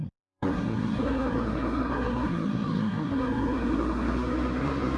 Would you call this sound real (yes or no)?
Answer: no